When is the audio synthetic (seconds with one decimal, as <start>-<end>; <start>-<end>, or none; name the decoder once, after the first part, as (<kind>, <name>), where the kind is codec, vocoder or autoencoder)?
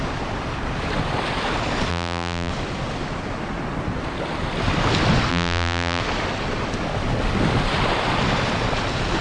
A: 1.9-2.5 (vocoder, BigVGAN v2); 5.3-6.0